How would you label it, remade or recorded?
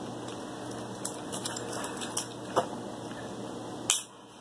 recorded